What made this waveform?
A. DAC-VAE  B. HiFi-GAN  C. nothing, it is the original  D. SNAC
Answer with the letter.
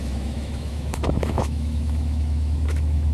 A